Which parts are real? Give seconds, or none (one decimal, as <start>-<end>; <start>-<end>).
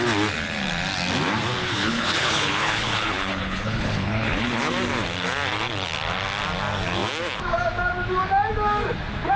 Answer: 0.0-1.6; 4.7-9.4